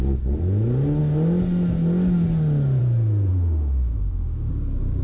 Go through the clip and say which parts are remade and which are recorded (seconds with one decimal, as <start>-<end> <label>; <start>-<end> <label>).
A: 0.0-3.3 recorded; 3.3-4.5 remade; 4.5-5.0 recorded